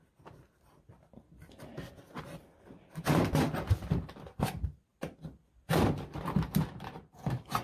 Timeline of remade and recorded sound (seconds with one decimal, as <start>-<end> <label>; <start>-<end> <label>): 0.0-7.6 recorded